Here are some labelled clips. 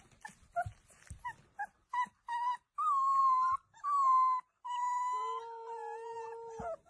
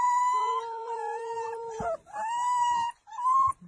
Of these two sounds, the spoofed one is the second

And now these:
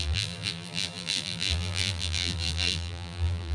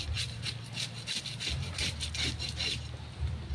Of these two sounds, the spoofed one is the first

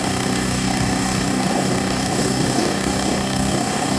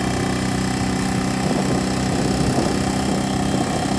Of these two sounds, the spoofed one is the first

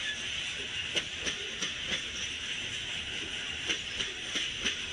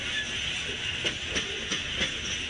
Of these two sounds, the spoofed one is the first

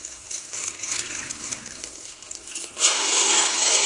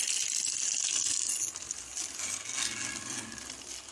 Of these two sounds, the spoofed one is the first